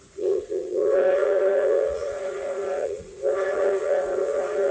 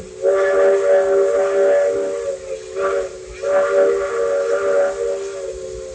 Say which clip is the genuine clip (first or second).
second